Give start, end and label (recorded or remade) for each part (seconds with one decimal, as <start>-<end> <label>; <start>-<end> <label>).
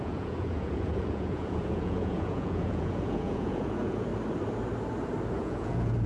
0.0-4.1 remade; 4.1-5.3 recorded; 5.3-6.1 remade